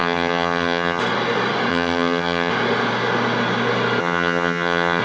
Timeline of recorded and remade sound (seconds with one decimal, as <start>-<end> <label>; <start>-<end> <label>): 0.0-1.0 remade; 1.0-1.7 recorded; 1.7-2.5 remade; 2.5-4.0 recorded; 4.0-5.0 remade